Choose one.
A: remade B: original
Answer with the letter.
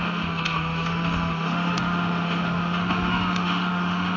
A